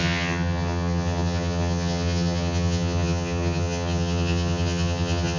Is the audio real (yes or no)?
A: no